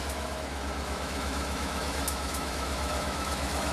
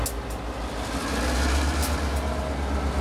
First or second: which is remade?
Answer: first